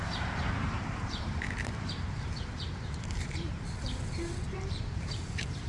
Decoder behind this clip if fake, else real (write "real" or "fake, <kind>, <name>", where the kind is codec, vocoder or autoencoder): fake, vocoder, BigVGAN v2